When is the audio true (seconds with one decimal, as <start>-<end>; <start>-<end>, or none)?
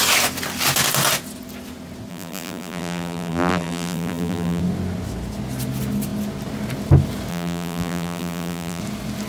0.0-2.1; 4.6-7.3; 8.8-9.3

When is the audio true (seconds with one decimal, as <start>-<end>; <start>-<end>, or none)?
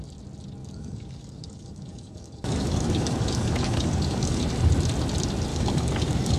0.0-0.6; 4.4-5.5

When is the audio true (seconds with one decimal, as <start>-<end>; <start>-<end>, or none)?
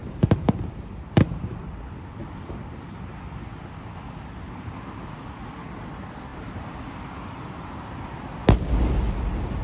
1.6-6.3; 6.9-9.6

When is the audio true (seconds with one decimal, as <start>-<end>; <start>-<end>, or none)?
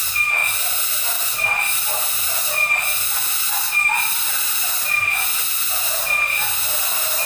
0.0-7.3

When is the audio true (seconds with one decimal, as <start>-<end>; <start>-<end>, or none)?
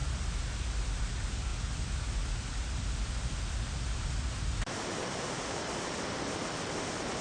0.0-7.2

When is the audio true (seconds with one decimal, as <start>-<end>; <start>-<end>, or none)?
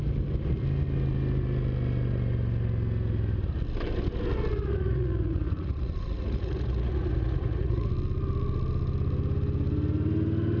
0.0-4.5; 7.9-10.6